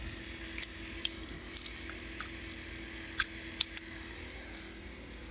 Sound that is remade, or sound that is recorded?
recorded